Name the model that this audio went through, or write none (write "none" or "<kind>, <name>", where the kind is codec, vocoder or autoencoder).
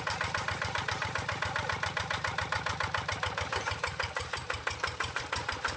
vocoder, BigVGAN v2